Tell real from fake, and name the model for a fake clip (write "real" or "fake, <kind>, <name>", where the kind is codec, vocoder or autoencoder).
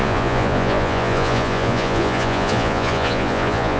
fake, vocoder, Vocos